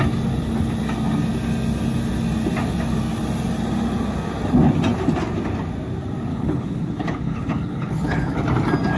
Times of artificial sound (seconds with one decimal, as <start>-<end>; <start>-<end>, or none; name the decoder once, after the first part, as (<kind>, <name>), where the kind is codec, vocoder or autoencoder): 6.3-8.3 (codec, HILCodec)